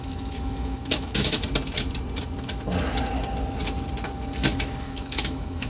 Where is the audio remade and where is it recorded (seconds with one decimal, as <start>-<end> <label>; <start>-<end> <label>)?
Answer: 0.0-1.4 remade; 1.4-4.8 recorded; 4.8-5.7 remade